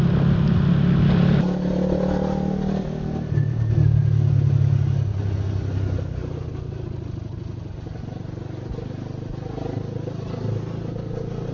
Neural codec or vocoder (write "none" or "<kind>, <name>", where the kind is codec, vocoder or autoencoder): none